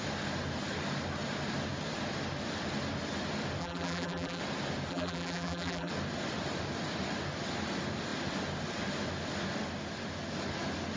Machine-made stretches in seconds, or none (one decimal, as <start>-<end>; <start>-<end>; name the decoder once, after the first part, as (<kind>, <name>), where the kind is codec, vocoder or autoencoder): 3.6-4.4 (vocoder, BigVGAN v2); 4.9-5.9

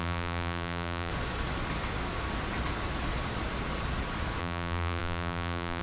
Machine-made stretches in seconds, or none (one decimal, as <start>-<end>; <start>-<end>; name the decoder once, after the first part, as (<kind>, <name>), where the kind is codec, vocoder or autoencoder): 0.0-1.1 (vocoder, BigVGAN v2); 4.4-5.8

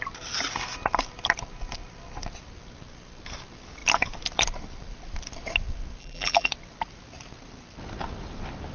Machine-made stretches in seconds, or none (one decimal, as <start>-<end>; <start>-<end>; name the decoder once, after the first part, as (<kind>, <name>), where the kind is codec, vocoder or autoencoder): 6.0-6.5 (vocoder, BigVGAN v2)

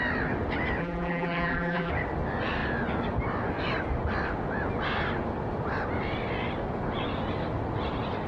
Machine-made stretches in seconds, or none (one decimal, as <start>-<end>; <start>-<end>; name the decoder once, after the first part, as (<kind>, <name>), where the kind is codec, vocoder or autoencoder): 0.8-1.9 (vocoder, BigVGAN v2)

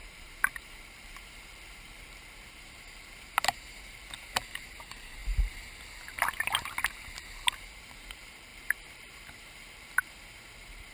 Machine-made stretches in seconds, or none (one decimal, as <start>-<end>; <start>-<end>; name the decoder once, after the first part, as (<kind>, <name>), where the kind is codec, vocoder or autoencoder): 0.0-10.9 (vocoder, BigVGAN v2)

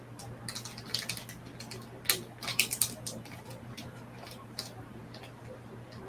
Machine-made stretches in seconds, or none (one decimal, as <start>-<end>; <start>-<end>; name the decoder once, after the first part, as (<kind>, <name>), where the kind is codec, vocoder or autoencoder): 2.5-5.0 (vocoder, BigVGAN v2)